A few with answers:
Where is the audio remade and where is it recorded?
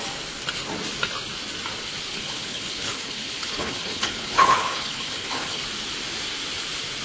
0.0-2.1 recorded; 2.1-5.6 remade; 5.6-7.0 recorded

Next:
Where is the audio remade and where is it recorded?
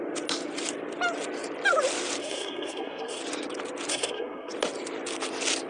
0.0-2.2 recorded; 2.2-3.2 remade; 3.2-3.9 recorded; 3.9-4.5 remade; 4.5-5.7 recorded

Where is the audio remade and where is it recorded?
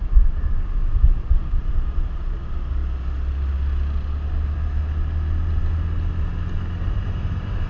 0.0-2.8 remade; 2.8-6.2 recorded; 6.2-7.7 remade